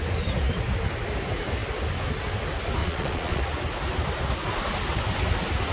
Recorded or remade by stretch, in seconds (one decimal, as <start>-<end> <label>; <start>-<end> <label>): 0.0-2.8 recorded; 2.8-3.4 remade; 3.4-5.7 recorded